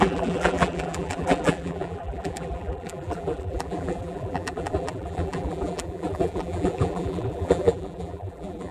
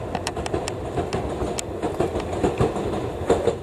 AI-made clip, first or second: first